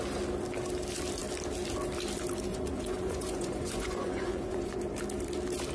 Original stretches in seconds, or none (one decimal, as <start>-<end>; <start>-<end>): 0.0-2.5; 4.8-5.7